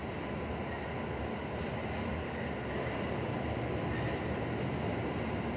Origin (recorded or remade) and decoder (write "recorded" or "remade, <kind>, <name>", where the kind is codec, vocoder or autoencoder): recorded